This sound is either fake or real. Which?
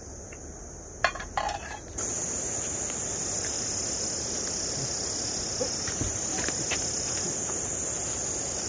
real